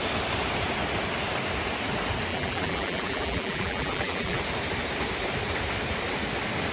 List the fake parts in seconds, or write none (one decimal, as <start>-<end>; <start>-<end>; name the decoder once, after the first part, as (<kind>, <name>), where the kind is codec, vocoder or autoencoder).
2.3-4.4 (vocoder, BigVGAN v2)